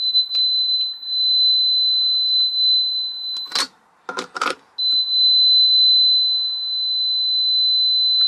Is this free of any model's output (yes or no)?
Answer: yes